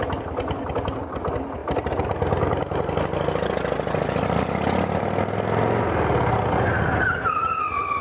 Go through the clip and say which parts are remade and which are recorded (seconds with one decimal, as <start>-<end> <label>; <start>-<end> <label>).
0.0-8.0 recorded